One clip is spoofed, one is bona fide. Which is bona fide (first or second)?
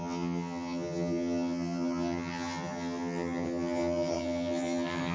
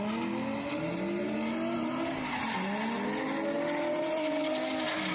second